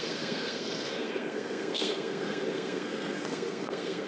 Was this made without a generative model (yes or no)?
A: no